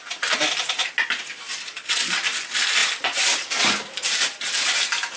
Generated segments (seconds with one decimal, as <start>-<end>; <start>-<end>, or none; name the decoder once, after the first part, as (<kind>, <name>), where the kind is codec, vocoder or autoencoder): none